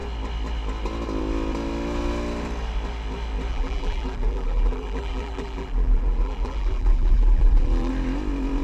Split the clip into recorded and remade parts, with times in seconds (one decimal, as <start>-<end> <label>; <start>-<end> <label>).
0.0-3.5 recorded; 3.5-7.9 remade; 7.9-8.6 recorded